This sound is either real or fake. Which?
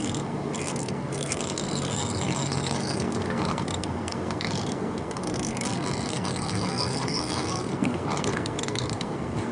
fake